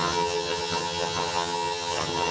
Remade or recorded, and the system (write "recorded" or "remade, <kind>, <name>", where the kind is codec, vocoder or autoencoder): remade, vocoder, HiFi-GAN